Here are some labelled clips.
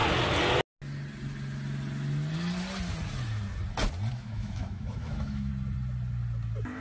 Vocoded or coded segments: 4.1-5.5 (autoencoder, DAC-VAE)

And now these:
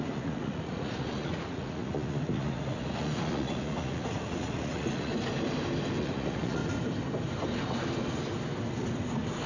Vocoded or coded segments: 0.0-5.1 (vocoder, Vocos); 6.0-6.6

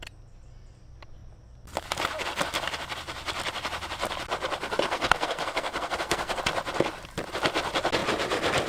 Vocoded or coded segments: 4.6-6.4 (codec, SNAC)

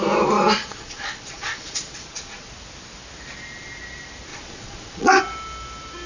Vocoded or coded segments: 0.6-2.5 (vocoder, Vocos); 4.3-5.2